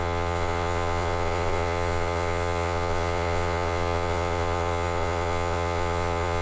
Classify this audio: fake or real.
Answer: fake